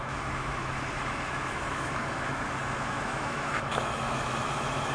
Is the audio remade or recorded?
remade